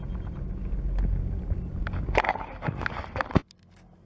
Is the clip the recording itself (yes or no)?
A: yes